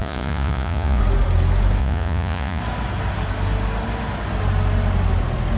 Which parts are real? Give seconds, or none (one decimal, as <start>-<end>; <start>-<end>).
1.0-1.8; 2.6-5.6